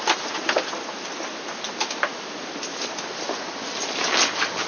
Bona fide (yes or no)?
yes